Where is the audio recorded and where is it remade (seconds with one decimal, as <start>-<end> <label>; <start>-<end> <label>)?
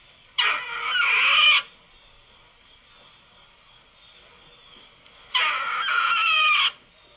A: 0.0-5.9 recorded; 5.9-6.4 remade; 6.4-7.2 recorded